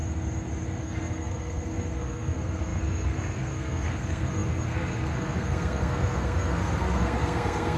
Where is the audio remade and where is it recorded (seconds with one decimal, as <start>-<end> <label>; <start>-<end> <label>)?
0.0-0.8 recorded; 0.8-7.8 remade